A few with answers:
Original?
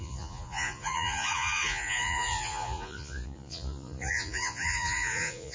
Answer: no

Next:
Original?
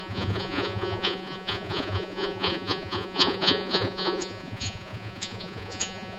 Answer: no